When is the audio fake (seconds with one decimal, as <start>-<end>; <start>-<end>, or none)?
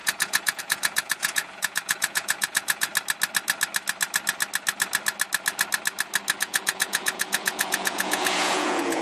0.0-2.9; 6.4-9.0